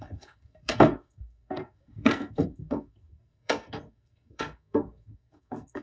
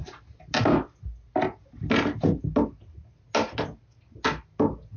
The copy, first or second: first